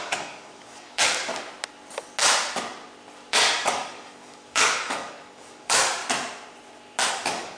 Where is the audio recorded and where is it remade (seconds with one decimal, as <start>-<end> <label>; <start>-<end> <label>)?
0.0-1.3 remade; 1.3-3.3 recorded; 3.3-6.0 remade; 6.0-7.1 recorded; 7.1-7.6 remade